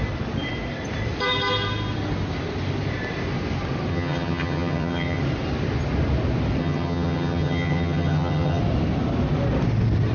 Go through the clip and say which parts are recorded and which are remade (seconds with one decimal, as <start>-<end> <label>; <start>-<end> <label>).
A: 0.0-3.9 recorded; 3.9-5.2 remade; 5.2-6.6 recorded; 6.6-8.6 remade; 8.6-10.1 recorded